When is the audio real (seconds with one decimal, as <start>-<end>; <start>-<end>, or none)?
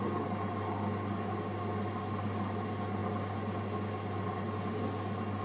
0.0-5.4